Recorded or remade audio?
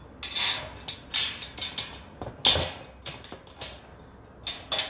recorded